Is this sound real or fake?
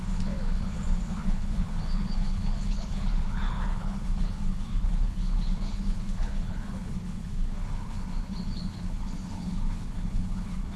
fake